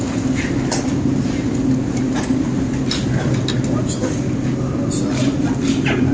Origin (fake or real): real